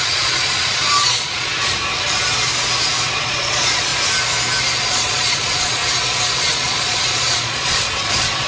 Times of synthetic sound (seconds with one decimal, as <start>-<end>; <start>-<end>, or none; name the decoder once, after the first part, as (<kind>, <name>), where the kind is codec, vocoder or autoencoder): 0.0-1.5 (vocoder, Vocos); 3.1-3.9; 4.9-5.8; 6.4-8.5